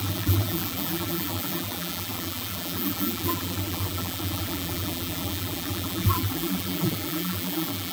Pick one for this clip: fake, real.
fake